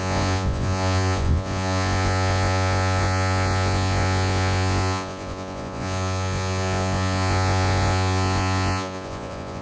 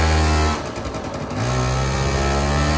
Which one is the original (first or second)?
second